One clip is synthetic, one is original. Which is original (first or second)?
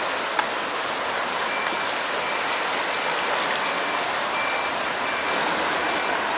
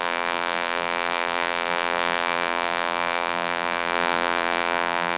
first